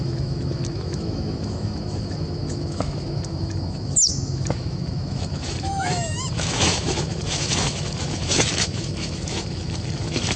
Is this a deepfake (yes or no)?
yes